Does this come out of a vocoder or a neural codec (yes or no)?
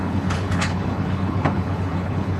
yes